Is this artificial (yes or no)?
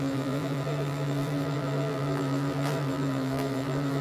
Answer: yes